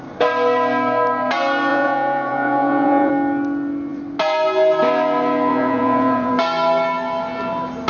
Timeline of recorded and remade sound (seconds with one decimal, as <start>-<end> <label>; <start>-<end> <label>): 0.0-1.7 recorded; 1.7-3.1 remade; 3.1-5.5 recorded; 5.5-6.3 remade; 6.3-7.9 recorded